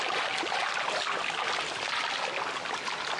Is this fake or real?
real